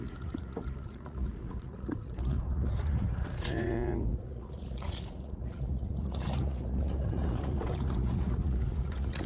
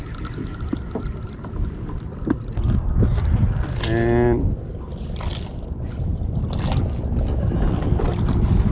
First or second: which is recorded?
second